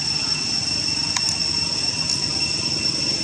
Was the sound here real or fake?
real